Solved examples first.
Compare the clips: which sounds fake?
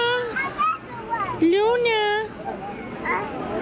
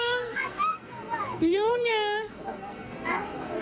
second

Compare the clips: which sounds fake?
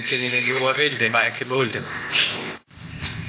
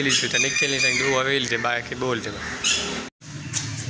first